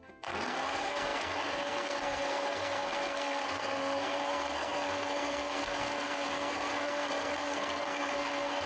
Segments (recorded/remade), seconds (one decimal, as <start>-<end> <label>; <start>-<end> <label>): 0.0-8.7 remade

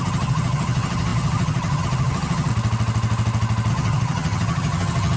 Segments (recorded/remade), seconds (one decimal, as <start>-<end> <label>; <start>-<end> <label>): 0.0-2.5 remade; 2.5-3.7 recorded; 3.7-5.2 remade